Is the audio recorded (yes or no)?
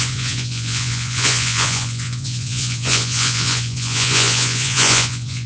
no